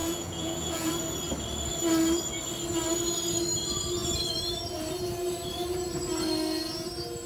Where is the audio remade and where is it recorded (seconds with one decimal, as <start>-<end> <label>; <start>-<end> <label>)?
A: 0.0-0.9 remade; 0.9-7.3 recorded

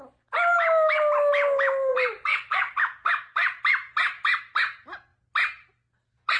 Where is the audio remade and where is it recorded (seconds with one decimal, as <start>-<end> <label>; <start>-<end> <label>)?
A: 0.0-1.9 recorded; 1.9-2.8 remade; 2.8-6.4 recorded

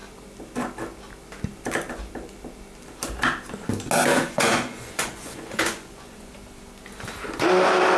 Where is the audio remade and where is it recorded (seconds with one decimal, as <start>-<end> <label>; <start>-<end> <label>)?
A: 0.0-4.0 recorded; 4.0-6.3 remade; 6.3-8.0 recorded

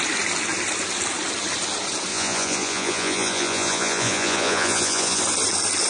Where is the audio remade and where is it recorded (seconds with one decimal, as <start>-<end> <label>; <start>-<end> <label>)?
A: 0.0-2.1 recorded; 2.1-5.2 remade; 5.2-5.9 recorded